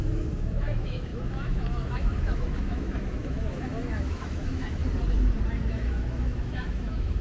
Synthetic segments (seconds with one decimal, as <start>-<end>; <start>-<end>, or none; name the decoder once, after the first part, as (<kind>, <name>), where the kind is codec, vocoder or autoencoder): 0.0-4.8 (autoencoder, DAC-VAE); 5.7-7.2